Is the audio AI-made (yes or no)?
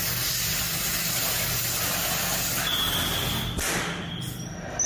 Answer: no